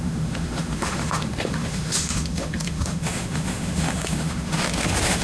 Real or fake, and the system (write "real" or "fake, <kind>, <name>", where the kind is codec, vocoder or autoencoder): fake, autoencoder, DAC-VAE